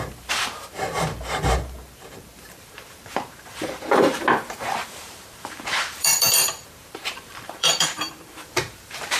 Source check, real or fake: fake